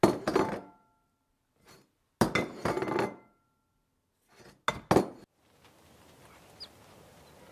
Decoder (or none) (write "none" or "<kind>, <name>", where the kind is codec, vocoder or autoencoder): none